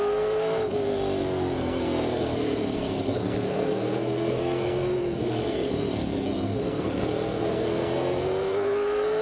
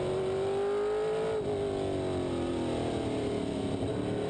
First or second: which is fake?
first